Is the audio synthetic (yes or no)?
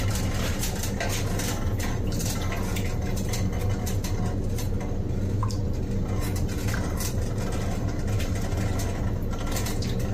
no